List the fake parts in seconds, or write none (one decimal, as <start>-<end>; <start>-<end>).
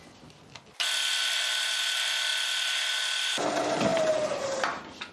3.9-4.4